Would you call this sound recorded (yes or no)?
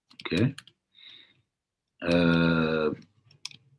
yes